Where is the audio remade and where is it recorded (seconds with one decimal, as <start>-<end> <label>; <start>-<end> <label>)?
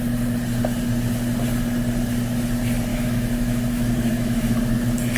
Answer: 0.0-2.9 recorded; 2.9-4.7 remade; 4.7-5.2 recorded